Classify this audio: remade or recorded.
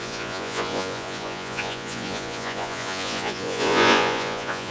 remade